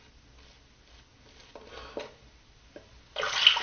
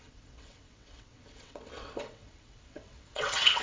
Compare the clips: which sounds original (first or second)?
first